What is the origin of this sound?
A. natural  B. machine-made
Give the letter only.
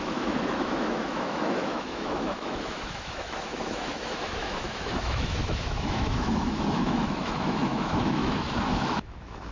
B